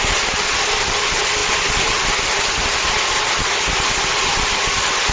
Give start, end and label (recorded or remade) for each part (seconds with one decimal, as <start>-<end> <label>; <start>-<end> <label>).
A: 0.0-1.4 remade; 1.4-4.5 recorded; 4.5-5.1 remade